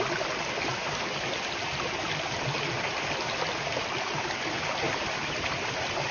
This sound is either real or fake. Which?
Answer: real